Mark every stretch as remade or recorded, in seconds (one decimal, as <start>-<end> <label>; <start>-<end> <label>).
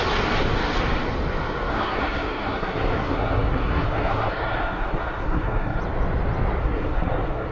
0.0-1.7 recorded; 1.7-5.8 remade; 5.8-6.6 recorded; 6.6-7.5 remade